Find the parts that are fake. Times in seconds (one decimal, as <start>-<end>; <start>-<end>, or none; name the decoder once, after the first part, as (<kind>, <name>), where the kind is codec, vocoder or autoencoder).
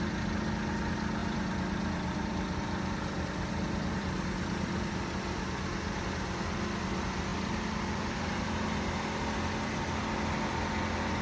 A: 1.2-6.0 (vocoder, BigVGAN v2)